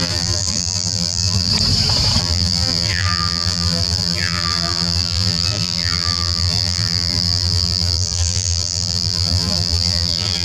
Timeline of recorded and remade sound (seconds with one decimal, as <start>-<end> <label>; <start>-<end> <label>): 0.0-1.5 remade; 1.5-2.2 recorded; 2.2-10.4 remade